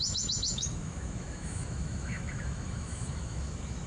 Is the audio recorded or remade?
remade